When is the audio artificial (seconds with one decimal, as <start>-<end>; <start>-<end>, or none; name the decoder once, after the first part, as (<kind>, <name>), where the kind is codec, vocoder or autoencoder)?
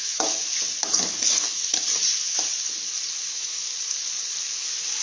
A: 0.0-0.5 (autoencoder, DAC-VAE); 1.1-1.7; 3.3-3.7; 4.4-5.0